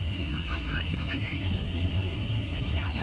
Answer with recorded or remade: remade